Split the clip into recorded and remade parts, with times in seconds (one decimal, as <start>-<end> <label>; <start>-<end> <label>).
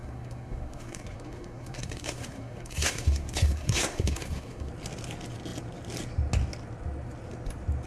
0.0-4.7 remade; 4.7-7.9 recorded